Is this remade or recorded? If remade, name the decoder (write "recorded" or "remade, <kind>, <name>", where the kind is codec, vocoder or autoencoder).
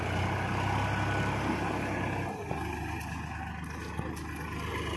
recorded